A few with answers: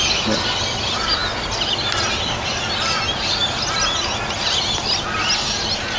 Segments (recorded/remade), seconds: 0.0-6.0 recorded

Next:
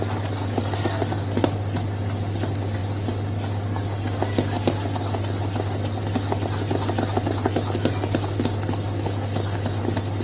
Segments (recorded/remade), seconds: 0.0-10.2 recorded

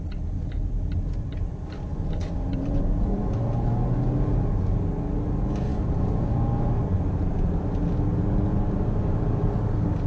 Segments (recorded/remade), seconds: 0.0-1.9 recorded; 1.9-4.6 remade; 4.6-8.5 recorded; 8.5-9.0 remade; 9.0-10.1 recorded

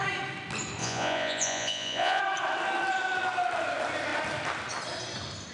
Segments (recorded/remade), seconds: 0.0-0.8 recorded; 0.8-2.2 remade; 2.2-5.5 recorded

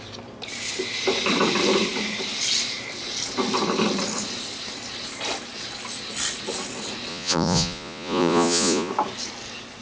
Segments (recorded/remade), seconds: 0.0-7.1 recorded; 7.1-8.9 remade; 8.9-9.8 recorded